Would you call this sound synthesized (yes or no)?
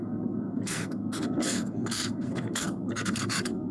yes